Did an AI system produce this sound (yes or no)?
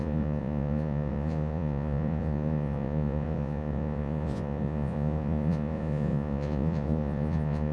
yes